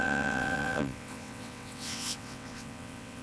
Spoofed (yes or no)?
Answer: yes